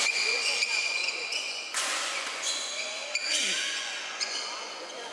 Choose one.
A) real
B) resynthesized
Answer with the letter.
B